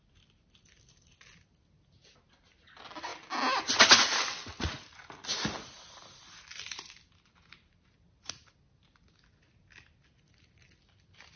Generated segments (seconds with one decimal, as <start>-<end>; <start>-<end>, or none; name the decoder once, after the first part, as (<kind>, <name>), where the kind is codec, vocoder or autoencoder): none